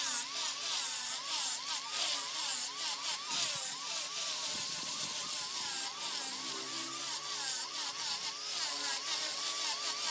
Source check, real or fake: real